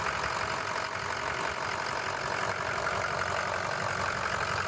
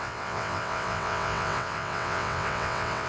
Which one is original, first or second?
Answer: first